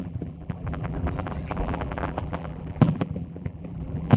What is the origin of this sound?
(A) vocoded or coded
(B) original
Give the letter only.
A